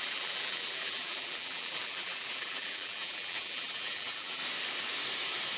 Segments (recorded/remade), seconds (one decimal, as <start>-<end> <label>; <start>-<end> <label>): 0.0-4.4 remade; 4.4-5.6 recorded